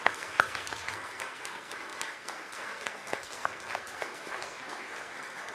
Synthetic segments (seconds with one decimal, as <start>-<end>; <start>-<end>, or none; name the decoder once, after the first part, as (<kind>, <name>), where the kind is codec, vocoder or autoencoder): 0.0-5.5 (codec, SNAC)